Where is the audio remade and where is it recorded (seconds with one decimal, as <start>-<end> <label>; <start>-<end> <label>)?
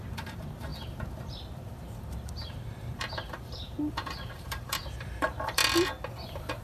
0.0-5.6 remade; 5.6-6.6 recorded